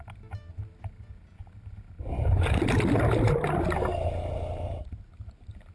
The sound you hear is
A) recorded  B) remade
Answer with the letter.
A